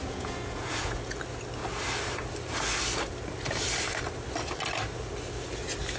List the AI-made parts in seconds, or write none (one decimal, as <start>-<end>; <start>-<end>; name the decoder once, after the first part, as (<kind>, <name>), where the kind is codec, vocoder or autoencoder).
0.0-1.2 (vocoder, Vocos)